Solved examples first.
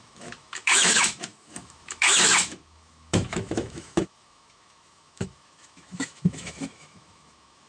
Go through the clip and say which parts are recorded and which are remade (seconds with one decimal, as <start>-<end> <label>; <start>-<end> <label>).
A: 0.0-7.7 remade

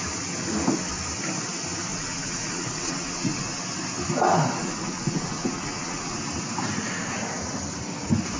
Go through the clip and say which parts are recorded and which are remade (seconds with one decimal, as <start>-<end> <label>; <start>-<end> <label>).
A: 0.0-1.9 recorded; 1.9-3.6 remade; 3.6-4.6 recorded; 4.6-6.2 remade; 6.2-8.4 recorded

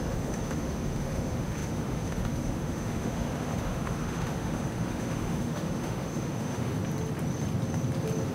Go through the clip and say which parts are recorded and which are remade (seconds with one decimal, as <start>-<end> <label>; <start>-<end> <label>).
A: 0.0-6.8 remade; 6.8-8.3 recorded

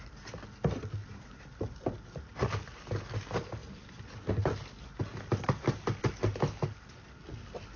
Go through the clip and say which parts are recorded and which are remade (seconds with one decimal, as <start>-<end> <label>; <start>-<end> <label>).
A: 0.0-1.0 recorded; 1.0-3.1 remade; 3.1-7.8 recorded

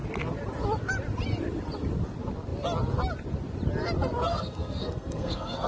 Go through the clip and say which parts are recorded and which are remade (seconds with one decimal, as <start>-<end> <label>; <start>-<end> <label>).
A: 0.0-4.3 recorded; 4.3-5.7 remade

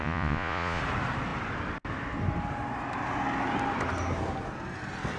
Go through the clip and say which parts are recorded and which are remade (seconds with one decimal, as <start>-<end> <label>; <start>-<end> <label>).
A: 0.0-0.8 remade; 0.8-5.2 recorded

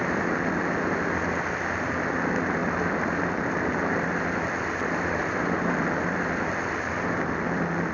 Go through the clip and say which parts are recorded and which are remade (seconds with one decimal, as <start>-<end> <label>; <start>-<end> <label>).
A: 0.0-2.6 recorded; 2.6-7.3 remade; 7.3-7.9 recorded